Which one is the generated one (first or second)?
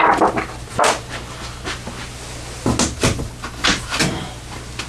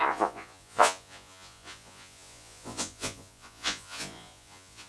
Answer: second